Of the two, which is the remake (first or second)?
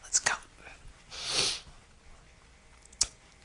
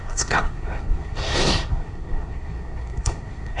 second